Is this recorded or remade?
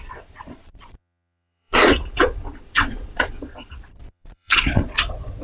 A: remade